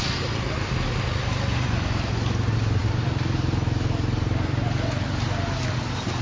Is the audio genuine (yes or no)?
yes